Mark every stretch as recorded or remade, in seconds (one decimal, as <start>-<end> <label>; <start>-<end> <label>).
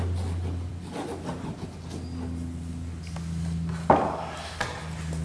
0.0-5.2 recorded